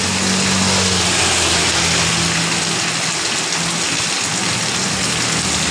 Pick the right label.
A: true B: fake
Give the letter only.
A